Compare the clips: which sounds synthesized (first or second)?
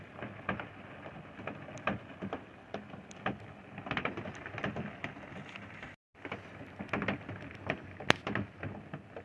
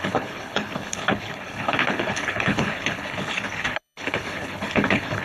second